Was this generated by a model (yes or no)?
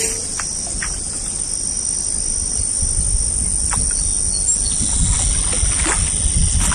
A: no